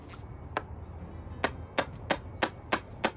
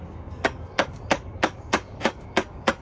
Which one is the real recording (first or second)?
first